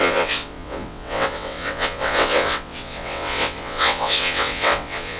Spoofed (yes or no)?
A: yes